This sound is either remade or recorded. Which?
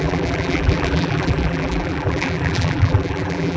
remade